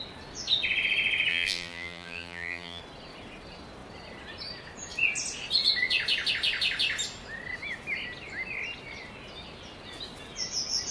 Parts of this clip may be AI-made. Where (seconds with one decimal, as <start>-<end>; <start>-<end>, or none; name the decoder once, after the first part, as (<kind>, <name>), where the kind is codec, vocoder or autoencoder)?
1.3-2.8 (vocoder, BigVGAN v2)